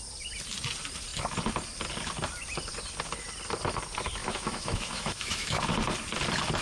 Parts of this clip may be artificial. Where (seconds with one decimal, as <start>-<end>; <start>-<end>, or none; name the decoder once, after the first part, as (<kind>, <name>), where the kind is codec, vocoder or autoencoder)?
4.2-5.6 (autoencoder, DAC-VAE)